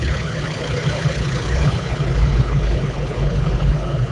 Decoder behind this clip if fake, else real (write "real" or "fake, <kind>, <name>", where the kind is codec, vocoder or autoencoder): fake, codec, HILCodec